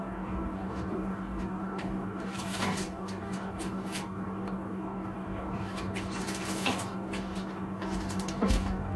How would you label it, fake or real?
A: fake